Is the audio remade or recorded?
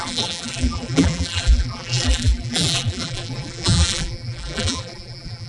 remade